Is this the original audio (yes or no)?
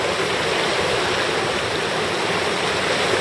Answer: yes